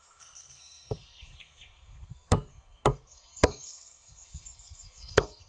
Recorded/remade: remade